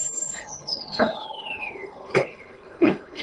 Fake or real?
fake